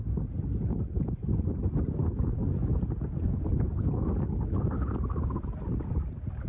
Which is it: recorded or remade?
recorded